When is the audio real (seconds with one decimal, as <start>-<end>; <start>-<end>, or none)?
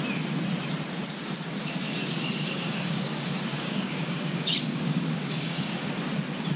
0.0-2.0; 5.9-6.6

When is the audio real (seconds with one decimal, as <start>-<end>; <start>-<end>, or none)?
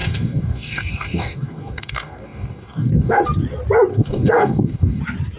3.2-3.9; 5.0-5.4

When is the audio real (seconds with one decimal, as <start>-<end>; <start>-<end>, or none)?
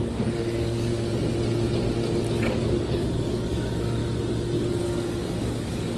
0.9-2.3; 4.0-4.7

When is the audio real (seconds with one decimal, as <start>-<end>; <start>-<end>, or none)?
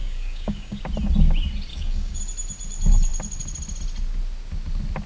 0.8-1.7; 2.2-5.1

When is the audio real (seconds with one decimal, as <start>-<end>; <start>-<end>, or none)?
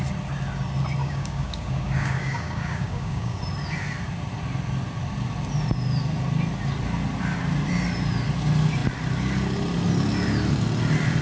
0.0-1.0; 3.4-11.2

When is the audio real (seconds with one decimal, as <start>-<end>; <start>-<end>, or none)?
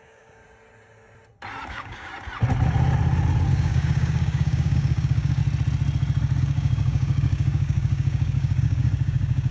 0.4-1.7; 2.1-3.5; 5.4-6.4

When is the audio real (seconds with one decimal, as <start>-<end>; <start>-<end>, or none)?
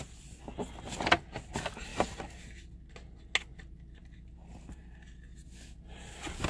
0.0-6.5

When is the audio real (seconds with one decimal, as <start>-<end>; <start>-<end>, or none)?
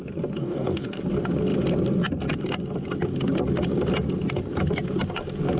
0.0-0.4; 1.0-5.6